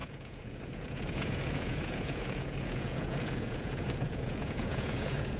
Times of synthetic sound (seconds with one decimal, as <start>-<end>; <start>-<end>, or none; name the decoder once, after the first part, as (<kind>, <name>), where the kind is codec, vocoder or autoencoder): 0.0-5.4 (vocoder, Vocos)